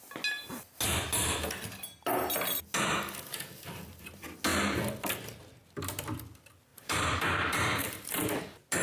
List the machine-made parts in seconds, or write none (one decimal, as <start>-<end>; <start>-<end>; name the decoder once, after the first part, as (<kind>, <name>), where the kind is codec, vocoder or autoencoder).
6.7-8.1 (vocoder, BigVGAN v2)

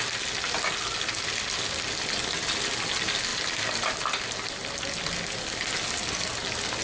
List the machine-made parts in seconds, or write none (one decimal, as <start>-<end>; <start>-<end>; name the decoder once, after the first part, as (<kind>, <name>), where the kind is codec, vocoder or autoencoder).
none

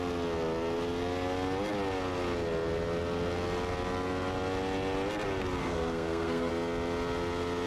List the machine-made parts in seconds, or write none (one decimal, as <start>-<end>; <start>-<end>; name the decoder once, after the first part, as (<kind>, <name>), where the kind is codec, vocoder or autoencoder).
5.6-6.5 (codec, SNAC)